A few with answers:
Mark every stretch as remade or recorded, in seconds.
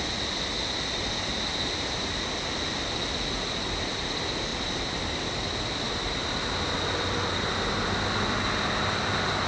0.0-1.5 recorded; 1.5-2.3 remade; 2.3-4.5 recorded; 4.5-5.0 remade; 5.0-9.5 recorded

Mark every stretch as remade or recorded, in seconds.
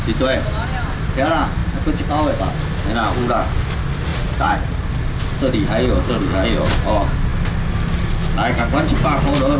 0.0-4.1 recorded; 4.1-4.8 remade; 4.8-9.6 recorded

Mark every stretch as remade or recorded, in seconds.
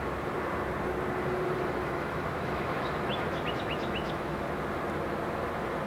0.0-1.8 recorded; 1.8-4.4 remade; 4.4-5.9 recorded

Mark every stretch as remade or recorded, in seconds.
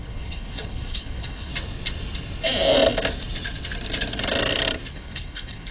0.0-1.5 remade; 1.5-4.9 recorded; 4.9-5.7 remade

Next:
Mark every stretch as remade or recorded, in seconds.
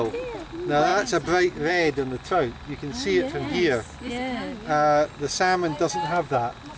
0.0-6.8 recorded